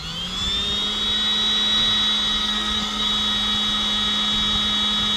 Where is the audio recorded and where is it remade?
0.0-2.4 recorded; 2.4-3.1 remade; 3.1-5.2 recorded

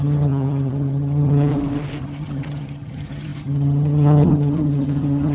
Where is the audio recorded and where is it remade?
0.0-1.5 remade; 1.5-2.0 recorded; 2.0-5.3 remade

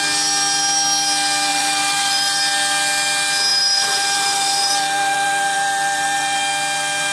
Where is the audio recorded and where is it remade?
0.0-1.5 recorded; 1.5-2.4 remade; 2.4-3.5 recorded; 3.5-6.4 remade; 6.4-7.1 recorded